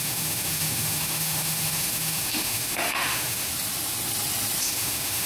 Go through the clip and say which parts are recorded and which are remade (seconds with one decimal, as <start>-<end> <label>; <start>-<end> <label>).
0.0-3.5 remade; 3.5-4.6 recorded; 4.6-5.3 remade